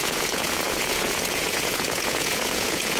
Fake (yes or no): yes